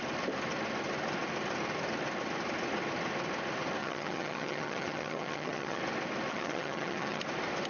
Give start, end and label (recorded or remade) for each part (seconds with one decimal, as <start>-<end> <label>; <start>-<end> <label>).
0.0-3.8 recorded; 3.8-5.8 remade; 5.8-6.3 recorded; 6.3-7.2 remade; 7.2-7.7 recorded